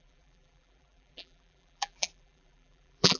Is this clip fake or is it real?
fake